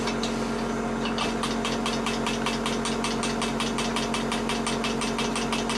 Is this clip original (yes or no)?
yes